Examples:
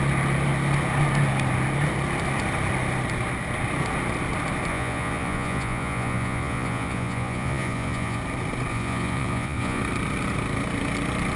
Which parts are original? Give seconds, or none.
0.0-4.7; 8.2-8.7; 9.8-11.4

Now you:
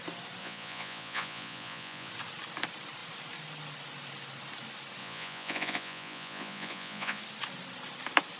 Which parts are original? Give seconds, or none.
0.0-0.4; 2.1-5.0; 7.2-8.4

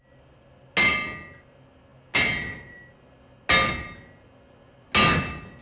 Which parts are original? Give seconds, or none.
0.0-5.6

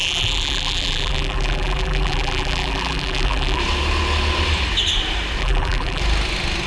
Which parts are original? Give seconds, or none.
3.6-5.4; 6.0-6.7

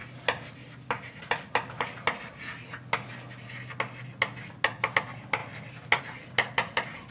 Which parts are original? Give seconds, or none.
0.0-7.1